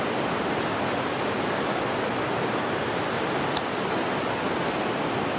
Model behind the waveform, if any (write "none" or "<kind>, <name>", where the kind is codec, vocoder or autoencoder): none